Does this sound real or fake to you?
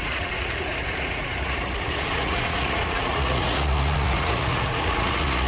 fake